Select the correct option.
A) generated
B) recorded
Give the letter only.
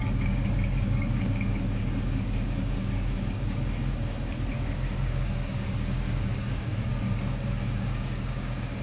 A